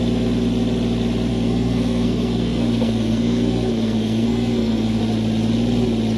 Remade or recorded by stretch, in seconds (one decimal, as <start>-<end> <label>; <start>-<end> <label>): 0.0-1.3 recorded; 1.3-5.0 remade; 5.0-6.2 recorded